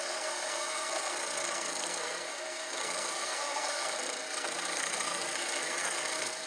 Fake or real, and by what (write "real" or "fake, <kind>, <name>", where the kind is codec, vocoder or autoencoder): fake, codec, SNAC